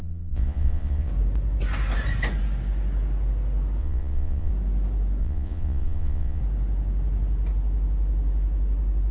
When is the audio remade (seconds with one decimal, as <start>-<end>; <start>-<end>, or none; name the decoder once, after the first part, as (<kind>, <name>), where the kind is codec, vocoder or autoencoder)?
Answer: 0.0-1.1 (vocoder, Vocos); 3.8-4.5; 5.2-6.4